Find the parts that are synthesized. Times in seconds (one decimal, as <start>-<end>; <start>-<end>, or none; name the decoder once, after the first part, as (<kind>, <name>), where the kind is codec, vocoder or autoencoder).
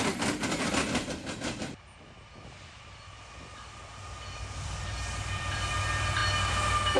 none